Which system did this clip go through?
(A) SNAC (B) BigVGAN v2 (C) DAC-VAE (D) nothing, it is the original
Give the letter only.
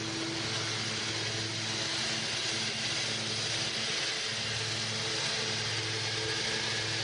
D